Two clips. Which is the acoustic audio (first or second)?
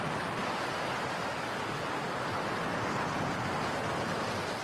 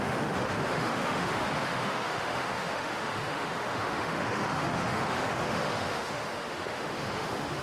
first